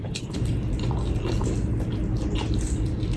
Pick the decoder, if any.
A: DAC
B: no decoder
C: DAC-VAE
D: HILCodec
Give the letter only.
B